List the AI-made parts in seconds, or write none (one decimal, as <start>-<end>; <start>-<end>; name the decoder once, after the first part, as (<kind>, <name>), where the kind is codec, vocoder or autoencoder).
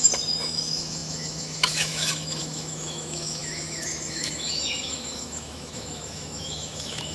0.0-7.1 (autoencoder, DAC-VAE)